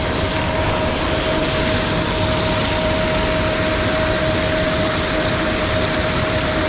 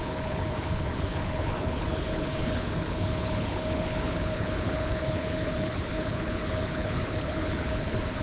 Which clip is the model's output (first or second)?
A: second